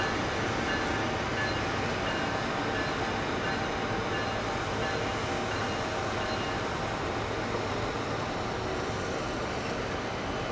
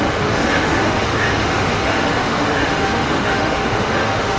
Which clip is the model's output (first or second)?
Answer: second